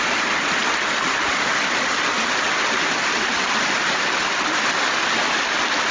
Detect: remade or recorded recorded